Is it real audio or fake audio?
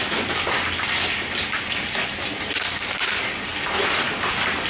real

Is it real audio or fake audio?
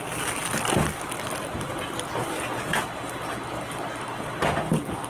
real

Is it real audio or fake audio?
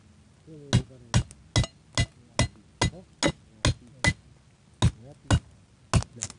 real